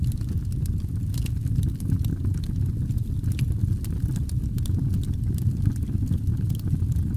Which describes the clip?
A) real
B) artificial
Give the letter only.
A